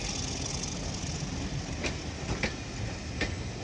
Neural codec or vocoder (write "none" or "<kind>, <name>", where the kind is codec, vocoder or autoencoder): none